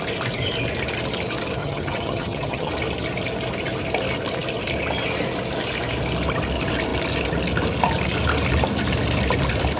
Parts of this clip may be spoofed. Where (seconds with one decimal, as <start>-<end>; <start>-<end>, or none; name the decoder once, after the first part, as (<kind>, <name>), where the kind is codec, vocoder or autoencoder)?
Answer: 1.6-2.7 (vocoder, HiFi-GAN)